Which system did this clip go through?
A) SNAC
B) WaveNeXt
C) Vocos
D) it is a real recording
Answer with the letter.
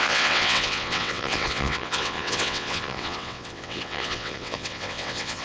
B